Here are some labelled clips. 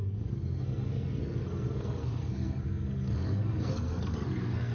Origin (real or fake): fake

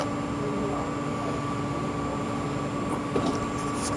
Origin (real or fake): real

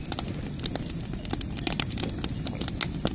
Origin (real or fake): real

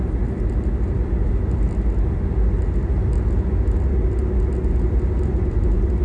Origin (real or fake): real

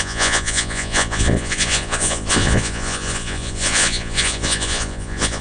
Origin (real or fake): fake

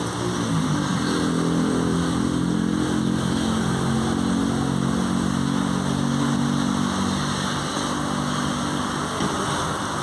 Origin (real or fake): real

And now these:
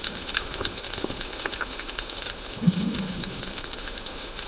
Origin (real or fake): fake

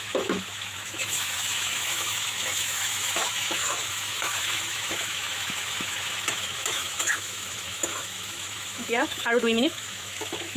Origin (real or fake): fake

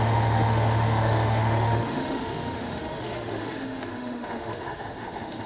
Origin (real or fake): fake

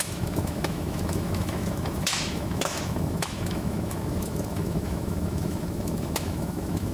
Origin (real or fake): fake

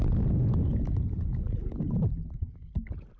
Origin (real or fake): real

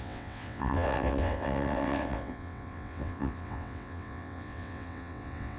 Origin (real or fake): fake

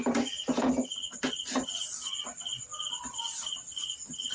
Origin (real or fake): real